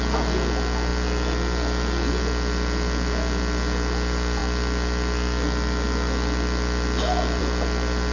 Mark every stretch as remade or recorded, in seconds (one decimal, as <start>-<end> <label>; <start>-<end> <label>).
0.0-8.1 recorded